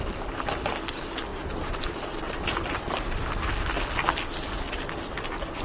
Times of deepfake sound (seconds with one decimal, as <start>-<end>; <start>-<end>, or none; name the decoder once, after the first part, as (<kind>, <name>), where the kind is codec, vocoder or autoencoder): 1.3-3.5 (vocoder, BigVGAN v2)